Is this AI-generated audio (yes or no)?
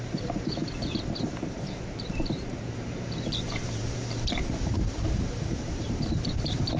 yes